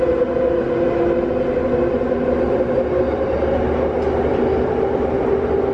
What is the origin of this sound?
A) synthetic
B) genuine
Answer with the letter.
B